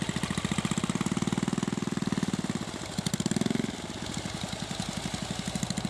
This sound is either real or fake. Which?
real